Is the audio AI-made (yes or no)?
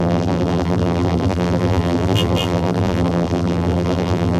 yes